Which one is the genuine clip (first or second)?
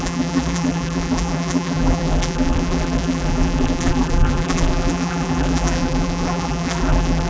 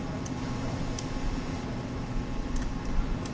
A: second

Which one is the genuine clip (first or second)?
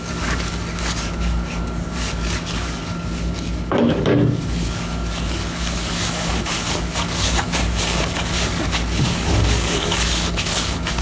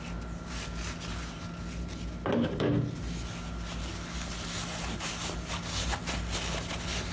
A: second